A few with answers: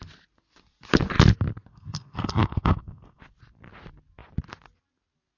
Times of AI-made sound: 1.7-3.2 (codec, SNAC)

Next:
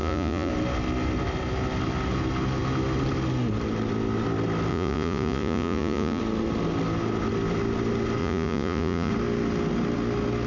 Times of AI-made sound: 0.0-0.5 (vocoder, Vocos); 4.7-6.2; 8.2-9.1

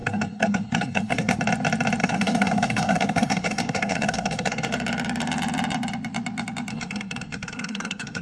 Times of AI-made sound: 0.0-1.4 (codec, SNAC); 2.0-4.7; 6.7-8.2

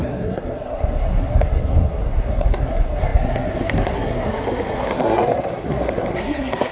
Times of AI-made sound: 0.0-6.7 (codec, SNAC)